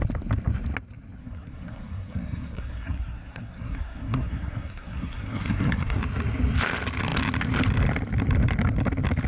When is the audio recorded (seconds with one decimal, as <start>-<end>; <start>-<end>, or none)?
0.0-1.2; 6.0-9.3